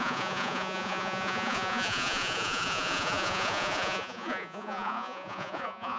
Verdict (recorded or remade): remade